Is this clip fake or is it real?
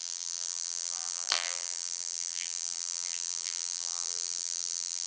fake